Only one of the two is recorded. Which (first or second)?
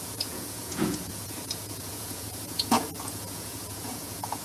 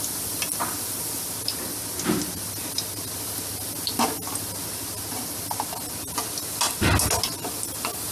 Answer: second